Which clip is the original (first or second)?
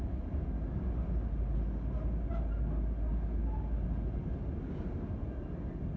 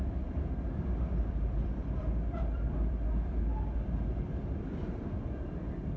first